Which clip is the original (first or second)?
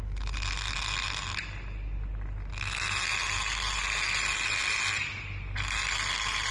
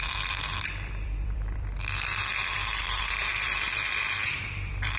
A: first